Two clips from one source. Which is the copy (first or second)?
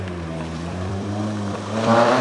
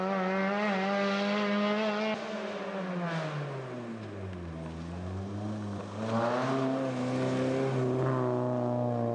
first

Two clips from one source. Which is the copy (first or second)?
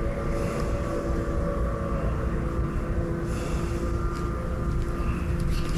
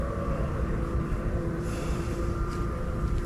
second